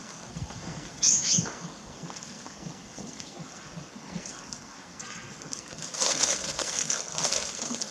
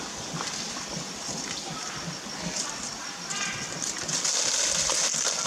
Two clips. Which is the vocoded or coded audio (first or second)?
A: first